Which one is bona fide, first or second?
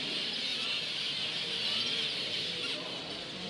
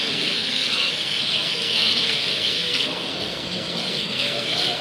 first